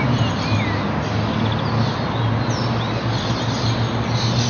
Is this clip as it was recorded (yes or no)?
yes